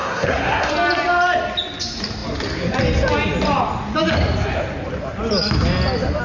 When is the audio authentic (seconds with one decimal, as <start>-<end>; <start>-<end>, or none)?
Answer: 0.7-6.2